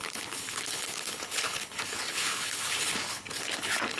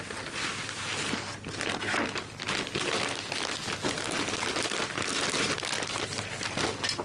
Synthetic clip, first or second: first